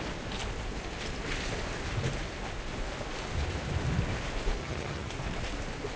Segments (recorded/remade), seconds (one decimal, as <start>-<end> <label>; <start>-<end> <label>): 0.0-4.6 recorded; 4.6-5.1 remade; 5.1-6.0 recorded

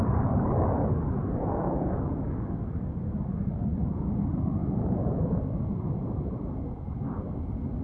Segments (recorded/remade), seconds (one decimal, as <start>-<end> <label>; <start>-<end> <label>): 0.0-7.8 remade